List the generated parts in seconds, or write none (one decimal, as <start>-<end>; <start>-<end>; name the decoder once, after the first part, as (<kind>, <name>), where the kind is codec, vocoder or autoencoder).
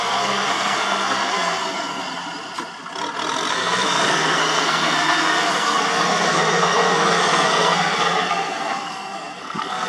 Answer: 0.0-2.0 (codec, SNAC); 3.5-9.9